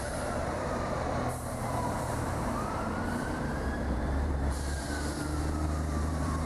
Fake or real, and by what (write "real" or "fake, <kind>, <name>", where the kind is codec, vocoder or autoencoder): fake, vocoder, BigVGAN v2